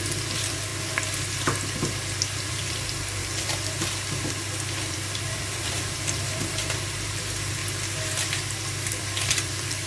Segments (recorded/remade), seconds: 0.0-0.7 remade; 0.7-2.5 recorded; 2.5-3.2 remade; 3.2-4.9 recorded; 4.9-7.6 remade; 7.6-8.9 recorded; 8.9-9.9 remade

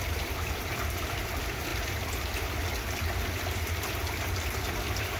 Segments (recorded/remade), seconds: 0.0-1.7 remade; 1.7-3.4 recorded; 3.4-5.2 remade